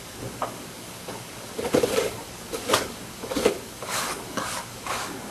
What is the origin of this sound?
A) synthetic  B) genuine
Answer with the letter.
A